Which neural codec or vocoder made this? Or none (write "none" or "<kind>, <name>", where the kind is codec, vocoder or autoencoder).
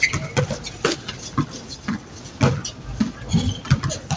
none